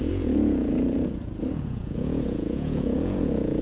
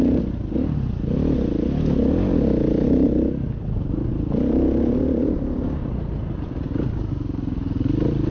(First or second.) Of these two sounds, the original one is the second